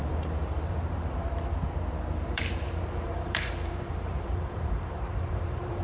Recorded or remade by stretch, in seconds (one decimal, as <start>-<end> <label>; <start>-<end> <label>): 0.0-1.3 remade; 1.3-2.2 recorded; 2.2-5.8 remade